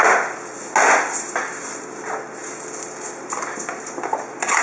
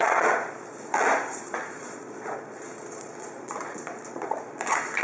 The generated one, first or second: second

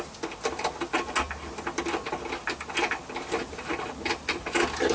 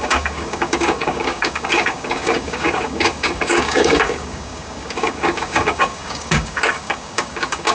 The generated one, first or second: second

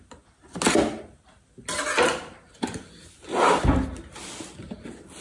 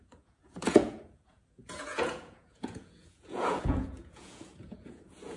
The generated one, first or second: second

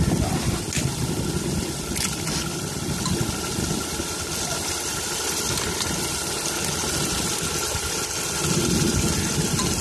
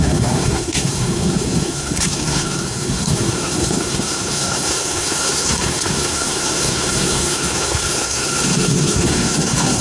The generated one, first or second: second